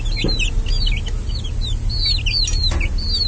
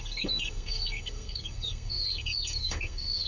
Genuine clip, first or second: first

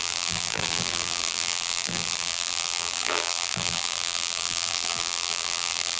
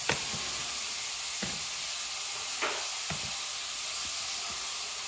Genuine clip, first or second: second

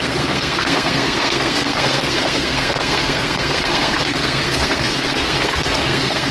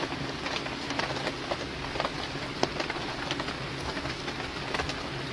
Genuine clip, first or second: second